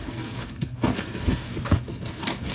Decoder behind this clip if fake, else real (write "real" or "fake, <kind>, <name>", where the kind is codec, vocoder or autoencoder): fake, codec, SNAC